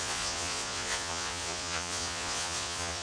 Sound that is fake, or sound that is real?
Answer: fake